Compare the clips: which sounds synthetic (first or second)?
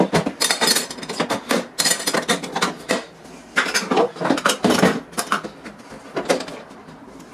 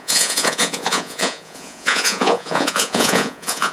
second